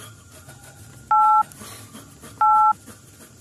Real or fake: real